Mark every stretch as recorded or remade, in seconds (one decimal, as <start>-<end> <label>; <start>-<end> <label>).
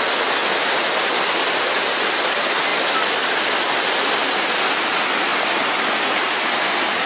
0.0-2.7 recorded; 2.7-4.5 remade; 4.5-7.1 recorded